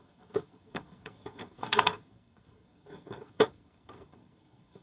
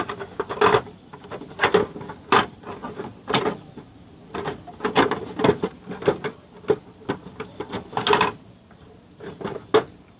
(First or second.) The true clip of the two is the second